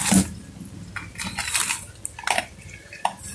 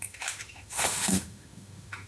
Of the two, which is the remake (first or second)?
second